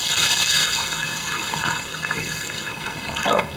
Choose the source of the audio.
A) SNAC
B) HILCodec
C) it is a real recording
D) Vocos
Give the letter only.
A